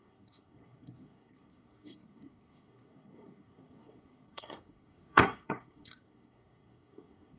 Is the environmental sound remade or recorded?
remade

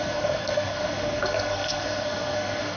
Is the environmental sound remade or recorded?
remade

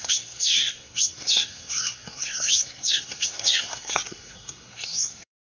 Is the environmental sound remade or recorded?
remade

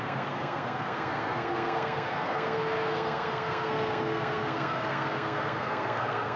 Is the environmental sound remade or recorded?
remade